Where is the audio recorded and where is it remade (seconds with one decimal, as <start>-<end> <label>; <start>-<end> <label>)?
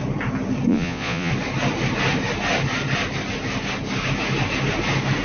0.0-0.7 recorded; 0.7-1.3 remade; 1.3-5.2 recorded